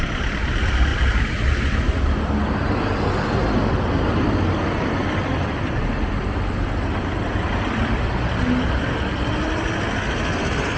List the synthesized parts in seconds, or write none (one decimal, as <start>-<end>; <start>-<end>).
0.9-3.1; 5.2-8.3